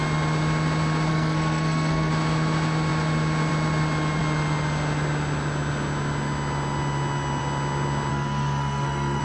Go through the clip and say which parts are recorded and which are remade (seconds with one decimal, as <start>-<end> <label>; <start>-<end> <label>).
0.0-1.1 recorded; 1.1-2.1 remade; 2.1-8.1 recorded; 8.1-9.2 remade